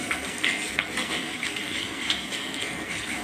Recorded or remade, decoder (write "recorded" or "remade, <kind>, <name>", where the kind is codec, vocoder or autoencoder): remade, codec, SNAC